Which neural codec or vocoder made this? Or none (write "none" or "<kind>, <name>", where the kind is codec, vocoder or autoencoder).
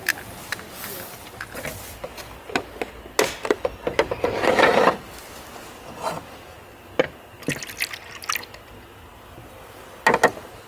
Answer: none